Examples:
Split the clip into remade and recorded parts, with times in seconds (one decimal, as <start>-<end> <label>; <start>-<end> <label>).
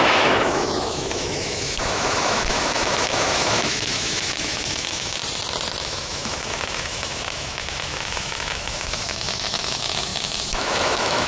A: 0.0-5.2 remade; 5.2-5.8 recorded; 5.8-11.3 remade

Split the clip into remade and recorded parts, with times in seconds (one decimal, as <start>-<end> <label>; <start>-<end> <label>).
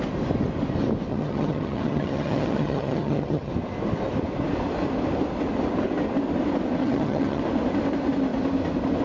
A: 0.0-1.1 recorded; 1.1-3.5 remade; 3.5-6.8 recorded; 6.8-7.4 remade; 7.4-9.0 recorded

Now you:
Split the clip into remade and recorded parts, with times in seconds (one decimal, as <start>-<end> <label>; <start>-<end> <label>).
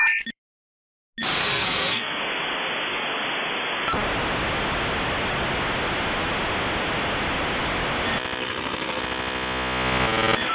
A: 0.0-1.4 recorded; 1.4-2.2 remade; 2.2-8.4 recorded; 8.4-9.0 remade; 9.0-10.5 recorded